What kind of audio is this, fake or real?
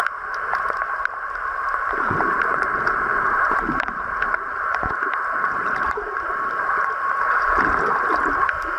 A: fake